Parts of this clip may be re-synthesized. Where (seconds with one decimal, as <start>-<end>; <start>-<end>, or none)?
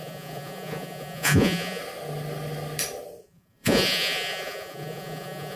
0.0-1.8; 3.2-5.6